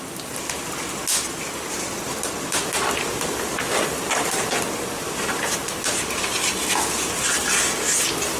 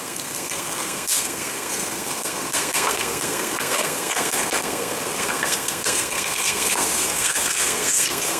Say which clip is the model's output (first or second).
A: second